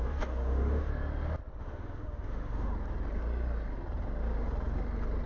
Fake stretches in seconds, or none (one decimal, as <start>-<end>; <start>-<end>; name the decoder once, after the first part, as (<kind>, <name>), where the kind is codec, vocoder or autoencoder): 0.0-0.9 (autoencoder, DAC-VAE); 1.6-2.7